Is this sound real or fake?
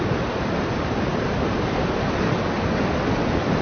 real